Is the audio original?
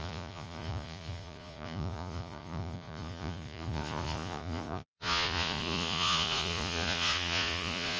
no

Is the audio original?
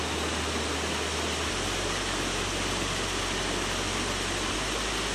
yes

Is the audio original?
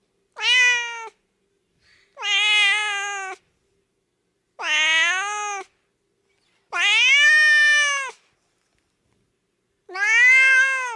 yes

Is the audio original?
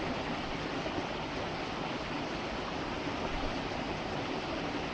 no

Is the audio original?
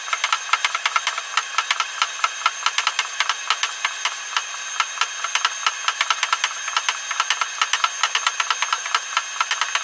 yes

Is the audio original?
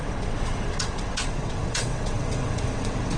no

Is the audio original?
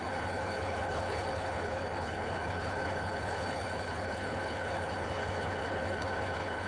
no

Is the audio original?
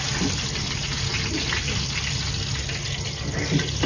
yes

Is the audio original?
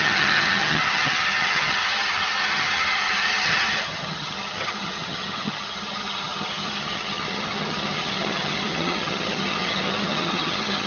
no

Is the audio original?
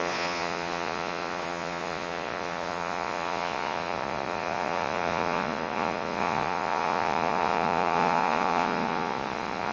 no